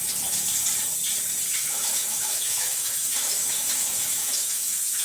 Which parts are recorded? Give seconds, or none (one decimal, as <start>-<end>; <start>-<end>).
0.0-1.5